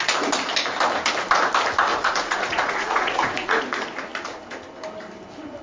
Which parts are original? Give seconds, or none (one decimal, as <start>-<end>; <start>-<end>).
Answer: 0.0-1.9; 3.6-5.6